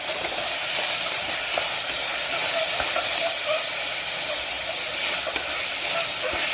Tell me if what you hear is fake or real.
fake